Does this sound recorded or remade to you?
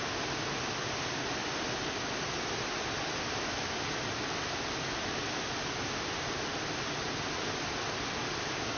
recorded